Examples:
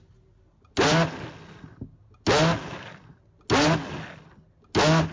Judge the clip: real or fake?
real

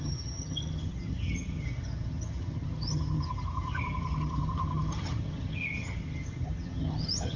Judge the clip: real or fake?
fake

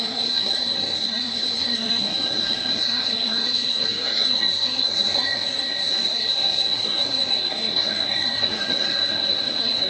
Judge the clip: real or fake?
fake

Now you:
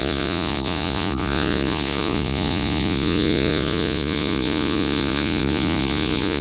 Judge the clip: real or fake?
fake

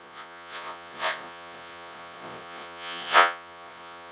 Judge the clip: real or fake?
fake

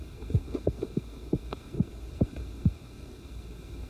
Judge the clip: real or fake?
fake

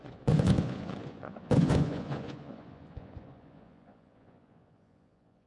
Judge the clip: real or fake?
fake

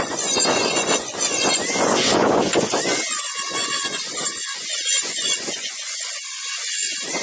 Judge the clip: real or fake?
fake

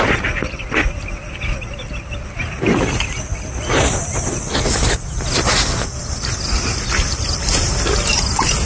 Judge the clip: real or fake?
real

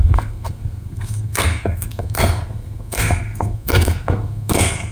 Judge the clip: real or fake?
fake